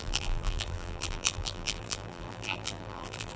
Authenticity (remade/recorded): remade